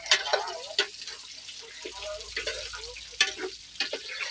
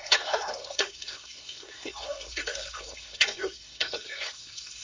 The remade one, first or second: second